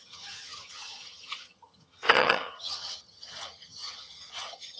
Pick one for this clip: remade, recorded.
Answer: remade